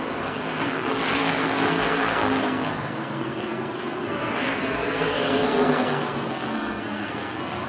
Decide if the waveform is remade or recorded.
remade